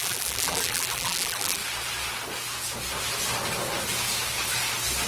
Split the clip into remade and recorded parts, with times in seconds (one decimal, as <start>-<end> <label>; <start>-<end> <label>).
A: 0.0-1.6 remade; 1.6-5.1 recorded